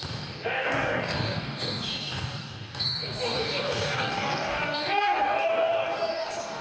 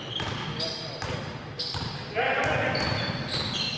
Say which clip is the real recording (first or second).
second